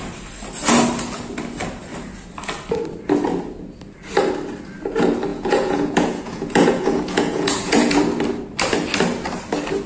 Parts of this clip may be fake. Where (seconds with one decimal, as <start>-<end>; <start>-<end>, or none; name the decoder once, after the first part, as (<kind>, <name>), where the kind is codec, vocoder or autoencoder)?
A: 5.3-8.0 (vocoder, Vocos)